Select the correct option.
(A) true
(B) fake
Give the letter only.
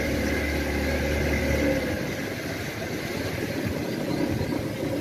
A